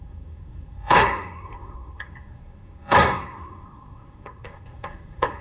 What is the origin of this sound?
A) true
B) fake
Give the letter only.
B